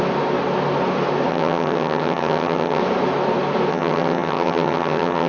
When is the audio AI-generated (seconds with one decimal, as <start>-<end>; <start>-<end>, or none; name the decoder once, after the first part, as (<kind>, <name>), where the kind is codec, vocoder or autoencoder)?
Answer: 1.3-2.8 (vocoder, HiFi-GAN); 3.7-5.3